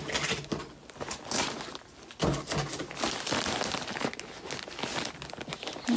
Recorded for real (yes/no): yes